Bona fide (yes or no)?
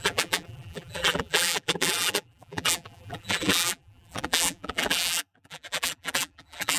no